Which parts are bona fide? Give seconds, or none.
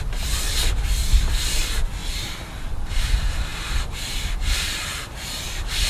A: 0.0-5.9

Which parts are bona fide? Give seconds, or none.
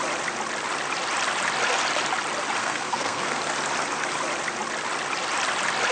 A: 0.0-2.6; 3.4-5.9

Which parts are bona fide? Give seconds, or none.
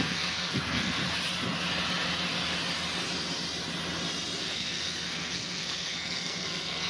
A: 1.0-4.4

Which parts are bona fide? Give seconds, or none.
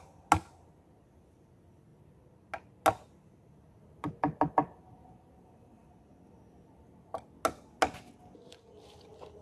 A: 0.0-9.4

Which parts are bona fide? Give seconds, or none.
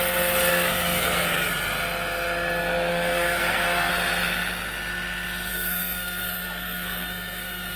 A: 0.0-0.5; 1.5-2.9; 3.9-5.5